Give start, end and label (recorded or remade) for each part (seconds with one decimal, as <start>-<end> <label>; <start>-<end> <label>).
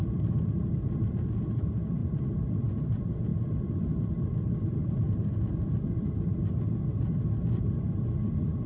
0.0-1.6 remade; 1.6-2.0 recorded; 2.0-2.7 remade; 2.7-3.3 recorded; 3.3-7.2 remade; 7.2-8.7 recorded